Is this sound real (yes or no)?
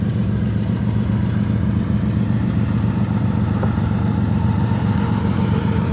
no